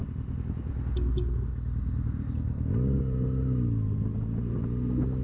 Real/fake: real